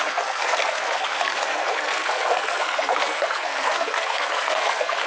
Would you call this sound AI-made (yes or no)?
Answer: yes